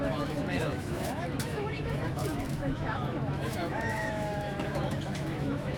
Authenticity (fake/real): fake